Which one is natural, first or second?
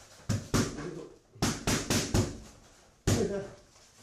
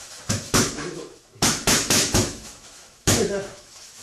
first